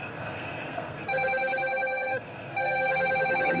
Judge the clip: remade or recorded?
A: remade